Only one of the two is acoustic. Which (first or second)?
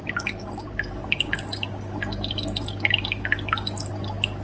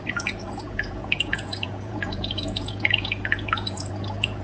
first